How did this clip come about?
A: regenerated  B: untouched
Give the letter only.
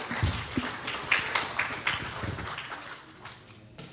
B